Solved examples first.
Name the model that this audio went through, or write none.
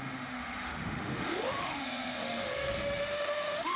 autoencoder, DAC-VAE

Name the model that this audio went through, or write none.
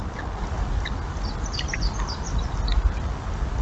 none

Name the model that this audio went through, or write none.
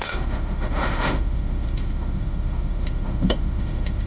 autoencoder, DAC-VAE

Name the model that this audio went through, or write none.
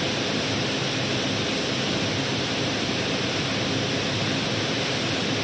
none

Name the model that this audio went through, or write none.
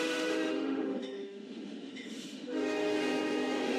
autoencoder, DAC-VAE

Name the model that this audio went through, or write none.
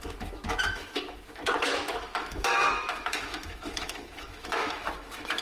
autoencoder, DAC-VAE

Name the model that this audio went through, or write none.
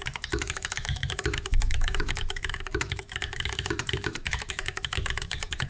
autoencoder, DAC-VAE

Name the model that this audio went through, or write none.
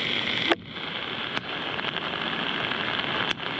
none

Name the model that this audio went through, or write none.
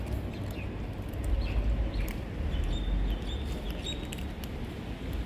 none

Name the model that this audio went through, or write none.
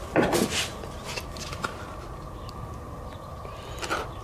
none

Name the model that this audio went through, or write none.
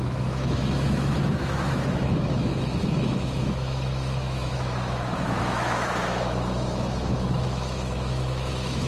autoencoder, DAC-VAE